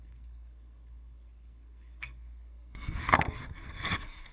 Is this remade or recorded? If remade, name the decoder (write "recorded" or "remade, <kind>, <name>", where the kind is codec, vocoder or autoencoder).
remade, codec, SNAC